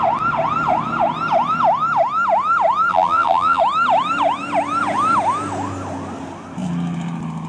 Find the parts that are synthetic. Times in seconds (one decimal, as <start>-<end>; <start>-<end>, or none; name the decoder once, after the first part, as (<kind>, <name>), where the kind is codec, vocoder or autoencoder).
2.9-3.6 (vocoder, BigVGAN v2)